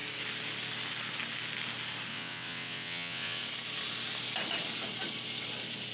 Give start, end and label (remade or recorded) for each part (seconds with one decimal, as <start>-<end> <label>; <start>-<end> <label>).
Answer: 0.0-2.1 recorded; 2.1-3.4 remade; 3.4-5.9 recorded